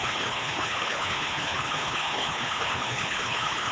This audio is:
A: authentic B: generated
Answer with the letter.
B